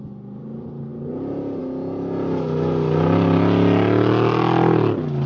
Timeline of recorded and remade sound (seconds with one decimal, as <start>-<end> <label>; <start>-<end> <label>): 0.0-5.3 recorded